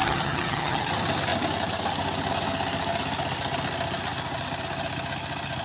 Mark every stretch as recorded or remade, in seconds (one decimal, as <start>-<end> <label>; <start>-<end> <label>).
0.0-0.9 remade; 0.9-5.6 recorded